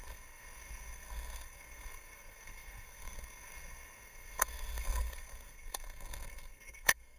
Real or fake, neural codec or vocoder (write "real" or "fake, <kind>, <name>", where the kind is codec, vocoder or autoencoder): fake, codec, SNAC